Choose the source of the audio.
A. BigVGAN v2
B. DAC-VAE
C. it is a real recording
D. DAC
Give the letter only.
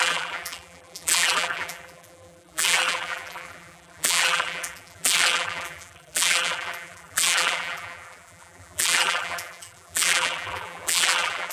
A